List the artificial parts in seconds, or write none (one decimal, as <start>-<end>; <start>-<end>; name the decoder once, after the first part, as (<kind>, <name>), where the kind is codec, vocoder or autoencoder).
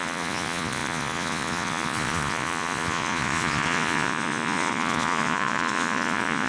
0.0-6.5 (vocoder, Vocos)